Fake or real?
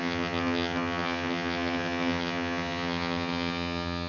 fake